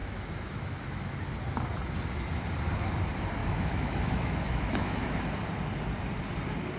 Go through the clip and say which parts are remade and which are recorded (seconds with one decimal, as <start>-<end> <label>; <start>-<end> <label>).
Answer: 0.0-1.1 remade; 1.1-3.4 recorded; 3.4-5.2 remade; 5.2-6.8 recorded